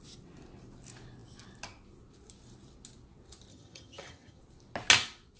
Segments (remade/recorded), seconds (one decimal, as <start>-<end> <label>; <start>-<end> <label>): 0.0-3.5 recorded; 3.5-4.4 remade; 4.4-5.4 recorded